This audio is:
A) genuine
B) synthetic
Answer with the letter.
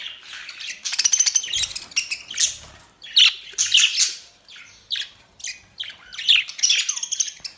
A